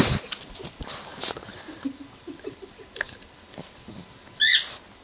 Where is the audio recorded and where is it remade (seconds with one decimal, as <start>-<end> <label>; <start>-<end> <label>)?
0.0-5.0 recorded